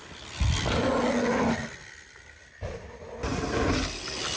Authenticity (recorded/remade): recorded